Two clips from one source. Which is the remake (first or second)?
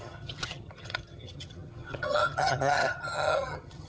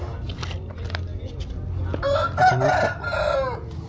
first